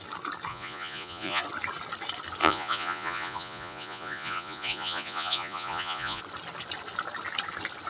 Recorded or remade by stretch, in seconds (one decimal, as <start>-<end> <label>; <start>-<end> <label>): 0.0-0.5 recorded; 0.5-1.4 remade; 1.4-2.4 recorded; 2.4-6.2 remade; 6.2-7.9 recorded